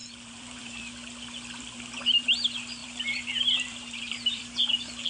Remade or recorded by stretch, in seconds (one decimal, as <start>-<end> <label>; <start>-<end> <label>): 0.0-0.9 remade; 0.9-2.8 recorded; 2.8-4.4 remade; 4.4-5.1 recorded